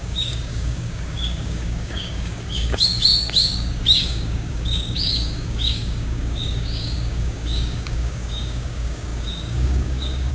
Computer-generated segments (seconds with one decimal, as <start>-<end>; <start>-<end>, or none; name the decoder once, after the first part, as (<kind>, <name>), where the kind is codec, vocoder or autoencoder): 0.0-10.3 (codec, DAC)